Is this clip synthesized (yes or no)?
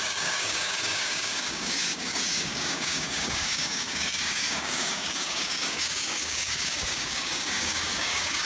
yes